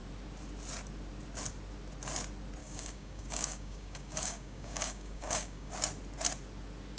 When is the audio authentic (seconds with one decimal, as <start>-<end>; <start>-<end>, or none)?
0.0-2.6; 5.7-7.0